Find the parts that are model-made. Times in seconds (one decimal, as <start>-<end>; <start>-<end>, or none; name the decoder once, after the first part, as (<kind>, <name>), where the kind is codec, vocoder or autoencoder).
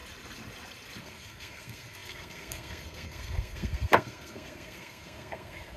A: 1.0-5.8 (codec, SNAC)